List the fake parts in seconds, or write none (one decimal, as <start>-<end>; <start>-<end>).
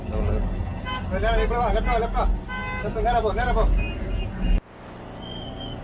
none